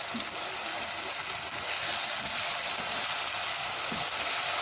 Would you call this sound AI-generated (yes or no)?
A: no